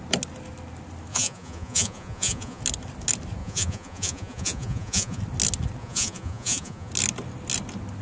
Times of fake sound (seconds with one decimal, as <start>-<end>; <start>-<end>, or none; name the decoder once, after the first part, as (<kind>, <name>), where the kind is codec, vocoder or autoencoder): 1.1-2.6 (vocoder, Vocos); 3.4-5.2; 5.8-6.9